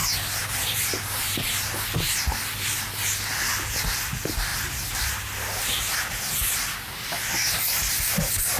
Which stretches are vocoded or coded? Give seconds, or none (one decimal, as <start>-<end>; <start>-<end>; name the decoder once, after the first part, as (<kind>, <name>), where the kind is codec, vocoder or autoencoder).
none